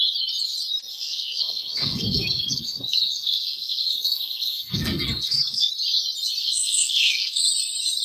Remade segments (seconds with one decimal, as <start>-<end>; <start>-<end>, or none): 0.9-5.7; 6.4-7.4

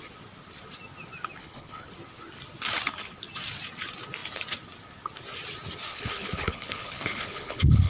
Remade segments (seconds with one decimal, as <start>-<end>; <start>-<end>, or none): 1.4-1.9; 5.9-7.9

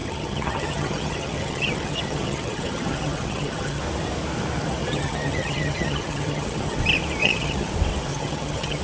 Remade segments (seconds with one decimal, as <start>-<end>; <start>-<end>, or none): 0.0-3.8; 4.8-6.8; 7.2-7.7; 8.1-8.8

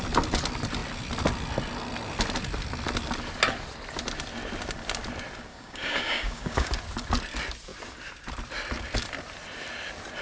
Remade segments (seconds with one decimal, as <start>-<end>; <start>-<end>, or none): 5.5-6.7

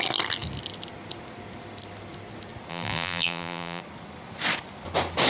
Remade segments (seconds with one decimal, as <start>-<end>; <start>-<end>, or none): 2.7-3.8